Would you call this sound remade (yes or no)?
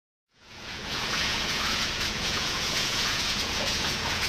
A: yes